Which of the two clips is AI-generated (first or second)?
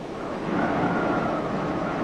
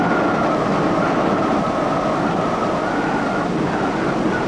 first